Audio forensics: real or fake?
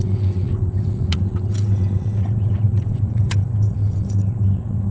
fake